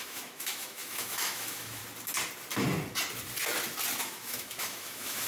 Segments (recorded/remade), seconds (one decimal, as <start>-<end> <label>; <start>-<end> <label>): 0.0-1.8 remade; 1.8-4.0 recorded; 4.0-5.3 remade